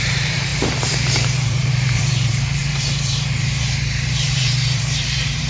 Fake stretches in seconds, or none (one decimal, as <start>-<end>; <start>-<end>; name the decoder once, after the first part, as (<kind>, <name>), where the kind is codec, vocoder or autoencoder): 0.0-5.5 (vocoder, BigVGAN v2)